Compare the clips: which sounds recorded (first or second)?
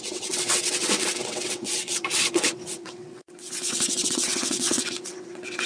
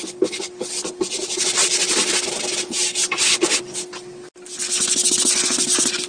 second